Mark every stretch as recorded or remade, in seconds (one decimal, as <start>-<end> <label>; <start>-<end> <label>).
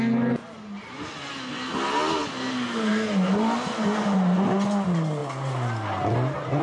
0.0-6.6 recorded